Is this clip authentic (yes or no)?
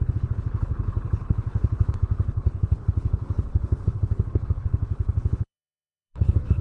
no